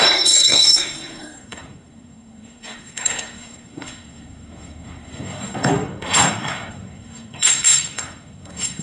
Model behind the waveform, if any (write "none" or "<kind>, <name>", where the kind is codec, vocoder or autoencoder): codec, SNAC